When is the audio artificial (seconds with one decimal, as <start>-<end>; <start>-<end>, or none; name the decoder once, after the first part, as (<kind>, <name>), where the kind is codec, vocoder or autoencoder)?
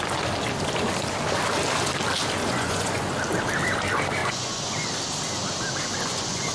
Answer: 2.4-3.1 (vocoder, Vocos); 4.2-4.9; 5.9-6.5